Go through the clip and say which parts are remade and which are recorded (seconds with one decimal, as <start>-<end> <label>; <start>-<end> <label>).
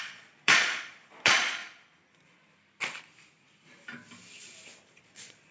0.0-1.6 remade; 1.6-4.9 recorded; 4.9-5.5 remade